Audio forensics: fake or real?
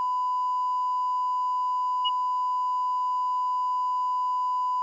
real